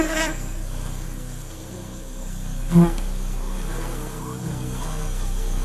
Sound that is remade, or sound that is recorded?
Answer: remade